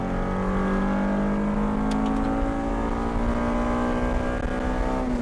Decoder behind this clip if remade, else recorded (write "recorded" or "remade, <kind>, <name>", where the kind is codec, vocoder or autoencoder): recorded